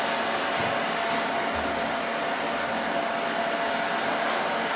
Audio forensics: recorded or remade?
recorded